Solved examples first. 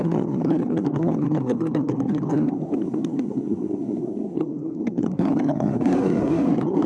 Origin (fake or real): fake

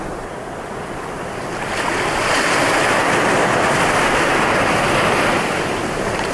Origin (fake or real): real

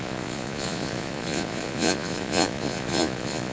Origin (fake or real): fake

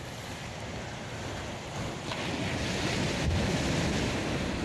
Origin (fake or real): real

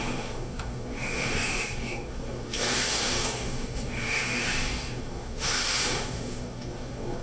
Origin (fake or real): fake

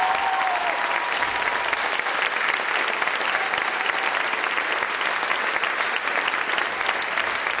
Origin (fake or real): real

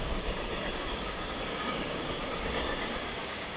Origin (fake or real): fake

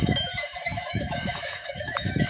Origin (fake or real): fake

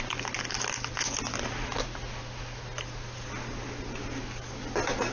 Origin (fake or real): real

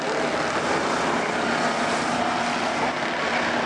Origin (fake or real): real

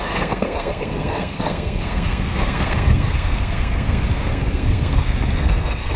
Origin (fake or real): fake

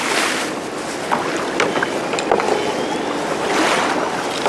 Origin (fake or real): real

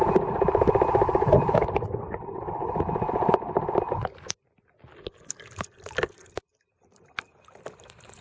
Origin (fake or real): real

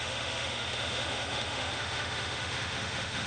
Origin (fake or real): fake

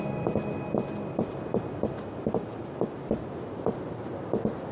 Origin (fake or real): real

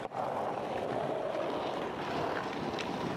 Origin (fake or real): real